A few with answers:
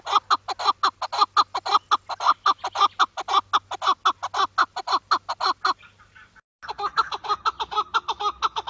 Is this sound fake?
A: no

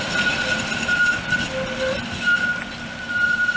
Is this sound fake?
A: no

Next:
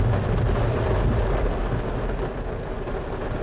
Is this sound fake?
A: no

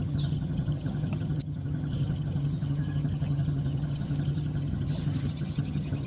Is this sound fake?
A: yes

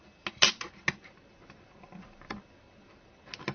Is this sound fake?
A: no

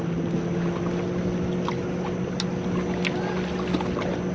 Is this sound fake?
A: no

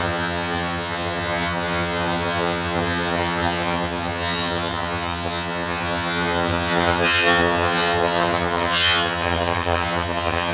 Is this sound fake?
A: yes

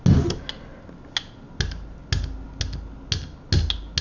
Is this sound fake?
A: no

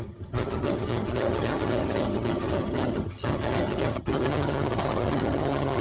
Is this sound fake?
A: yes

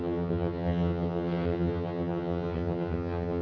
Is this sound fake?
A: yes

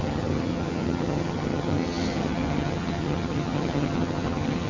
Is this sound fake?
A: yes